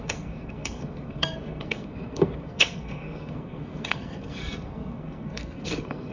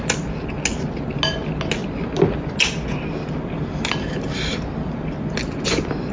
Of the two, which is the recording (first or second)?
second